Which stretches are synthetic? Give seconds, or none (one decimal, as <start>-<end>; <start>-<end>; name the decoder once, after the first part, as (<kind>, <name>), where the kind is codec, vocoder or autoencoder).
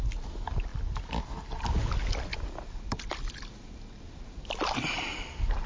none